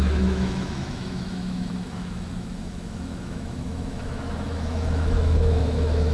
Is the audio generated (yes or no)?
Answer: yes